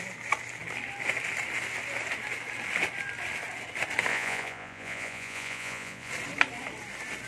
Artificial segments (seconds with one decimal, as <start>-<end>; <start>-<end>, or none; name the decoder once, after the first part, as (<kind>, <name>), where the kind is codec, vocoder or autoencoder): 4.1-6.1 (vocoder, Vocos)